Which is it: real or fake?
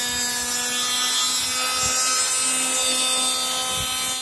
real